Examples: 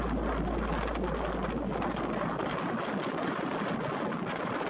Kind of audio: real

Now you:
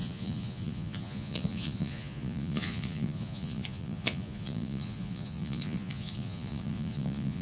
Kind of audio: fake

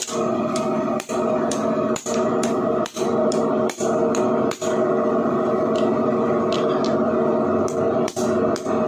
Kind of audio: real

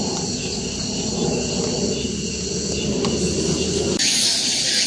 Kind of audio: real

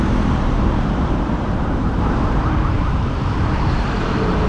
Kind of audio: fake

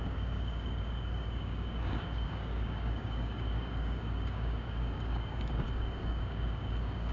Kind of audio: fake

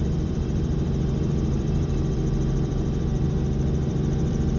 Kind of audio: fake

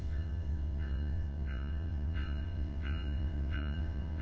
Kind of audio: fake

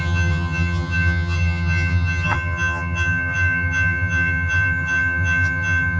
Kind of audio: fake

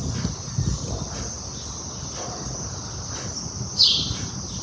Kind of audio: real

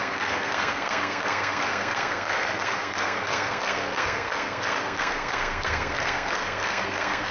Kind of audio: fake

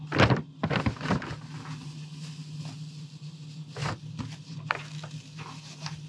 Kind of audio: real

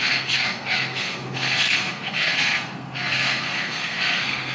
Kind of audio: fake